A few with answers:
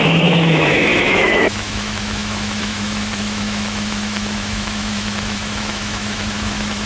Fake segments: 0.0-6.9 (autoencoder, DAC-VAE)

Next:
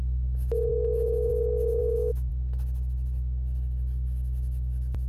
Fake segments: 0.7-1.3 (autoencoder, DAC-VAE); 1.8-2.3

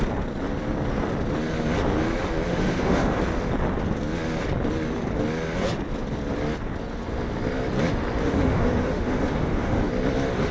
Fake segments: 2.5-3.2 (autoencoder, DAC-VAE); 8.2-9.9